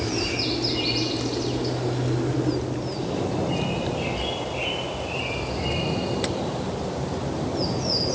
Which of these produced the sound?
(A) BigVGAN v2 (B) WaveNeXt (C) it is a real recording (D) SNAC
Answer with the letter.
C